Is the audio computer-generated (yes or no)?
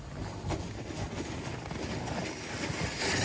no